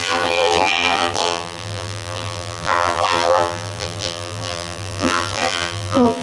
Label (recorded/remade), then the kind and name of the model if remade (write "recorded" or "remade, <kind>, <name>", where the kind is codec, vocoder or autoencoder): remade, vocoder, BigVGAN v2